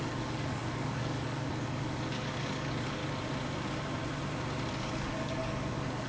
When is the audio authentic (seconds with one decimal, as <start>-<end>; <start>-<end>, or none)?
3.0-4.7